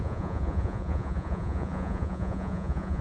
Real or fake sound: fake